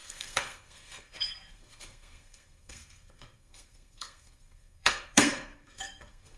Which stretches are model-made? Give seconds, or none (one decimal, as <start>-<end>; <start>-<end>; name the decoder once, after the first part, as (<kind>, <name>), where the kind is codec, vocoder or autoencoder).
0.0-6.4 (codec, SNAC)